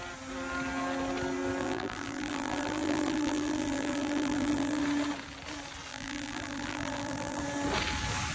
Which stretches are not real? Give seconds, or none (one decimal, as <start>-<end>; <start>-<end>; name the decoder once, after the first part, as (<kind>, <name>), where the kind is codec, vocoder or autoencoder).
1.6-4.8 (vocoder, BigVGAN v2); 5.9-7.4